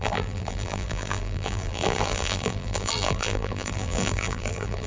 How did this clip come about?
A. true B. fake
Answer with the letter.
B